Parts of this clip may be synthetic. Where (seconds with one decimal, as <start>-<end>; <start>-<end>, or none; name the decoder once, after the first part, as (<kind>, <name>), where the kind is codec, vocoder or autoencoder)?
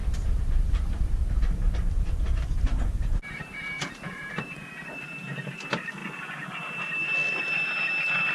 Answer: 0.0-4.3 (vocoder, BigVGAN v2)